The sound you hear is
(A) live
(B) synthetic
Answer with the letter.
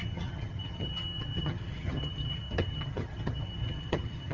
B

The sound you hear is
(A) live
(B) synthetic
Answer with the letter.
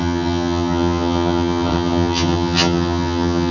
B